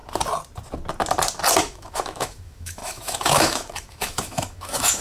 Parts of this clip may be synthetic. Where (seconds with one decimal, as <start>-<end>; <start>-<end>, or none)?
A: 1.6-5.0

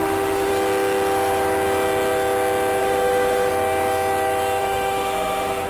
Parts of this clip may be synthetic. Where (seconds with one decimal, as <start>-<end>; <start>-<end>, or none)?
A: 0.0-0.5; 2.8-3.5; 4.6-5.7

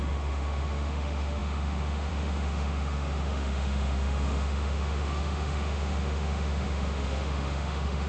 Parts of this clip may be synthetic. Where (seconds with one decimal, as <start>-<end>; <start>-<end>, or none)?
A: 0.0-8.1

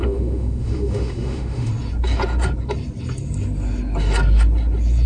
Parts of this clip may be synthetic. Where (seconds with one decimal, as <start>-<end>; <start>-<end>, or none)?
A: 0.0-1.7

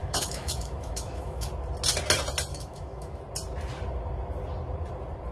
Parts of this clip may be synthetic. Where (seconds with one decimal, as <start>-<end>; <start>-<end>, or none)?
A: 0.0-1.5; 2.5-3.2

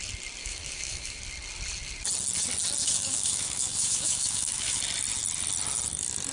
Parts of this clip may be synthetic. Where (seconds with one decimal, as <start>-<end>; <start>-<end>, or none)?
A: 0.4-1.2; 2.8-4.8